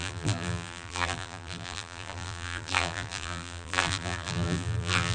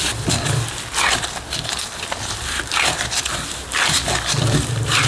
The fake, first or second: first